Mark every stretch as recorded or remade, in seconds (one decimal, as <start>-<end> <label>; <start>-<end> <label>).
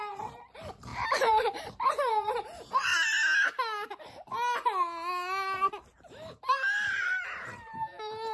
0.0-2.9 remade; 2.9-5.7 recorded; 5.7-8.3 remade